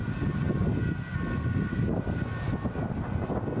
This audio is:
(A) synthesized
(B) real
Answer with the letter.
B